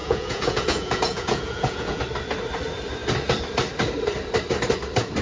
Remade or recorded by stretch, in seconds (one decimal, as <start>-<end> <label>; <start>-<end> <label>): 0.0-2.0 remade; 2.0-5.2 recorded